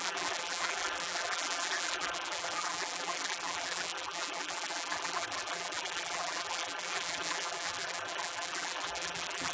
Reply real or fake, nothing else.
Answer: fake